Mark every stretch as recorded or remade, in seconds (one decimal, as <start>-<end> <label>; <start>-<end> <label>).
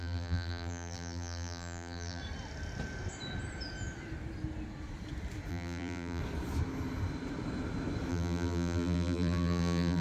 0.0-2.2 remade; 2.2-5.5 recorded; 5.5-6.2 remade; 6.2-8.1 recorded; 8.1-10.0 remade